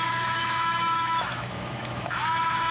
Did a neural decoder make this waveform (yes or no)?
yes